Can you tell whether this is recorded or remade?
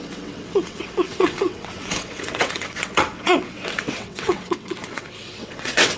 remade